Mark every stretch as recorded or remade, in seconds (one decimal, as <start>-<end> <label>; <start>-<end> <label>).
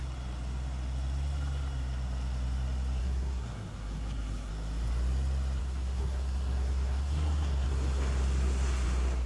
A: 0.0-3.0 recorded; 3.0-4.5 remade; 4.5-5.6 recorded; 5.6-7.7 remade; 7.7-9.3 recorded